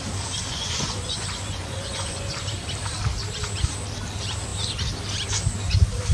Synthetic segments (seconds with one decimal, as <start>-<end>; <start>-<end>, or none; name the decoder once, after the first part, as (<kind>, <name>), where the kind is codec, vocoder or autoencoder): 0.5-2.3 (vocoder, Vocos)